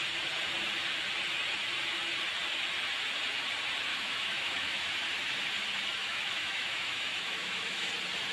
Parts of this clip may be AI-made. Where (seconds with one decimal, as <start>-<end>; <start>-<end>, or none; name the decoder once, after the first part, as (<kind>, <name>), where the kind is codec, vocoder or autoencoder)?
3.9-4.9 (autoencoder, DAC-VAE); 6.0-7.9